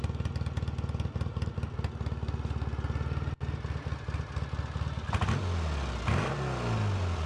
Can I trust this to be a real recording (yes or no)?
yes